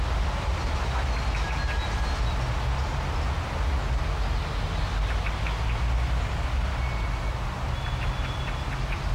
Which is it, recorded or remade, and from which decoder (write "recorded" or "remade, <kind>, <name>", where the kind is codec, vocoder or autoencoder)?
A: recorded